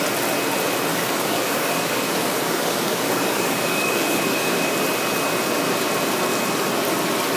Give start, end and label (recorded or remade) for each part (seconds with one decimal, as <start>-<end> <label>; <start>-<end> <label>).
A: 0.0-0.9 recorded; 0.9-4.7 remade; 4.7-7.4 recorded